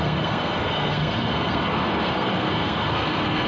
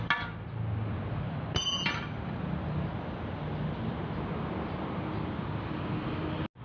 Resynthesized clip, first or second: first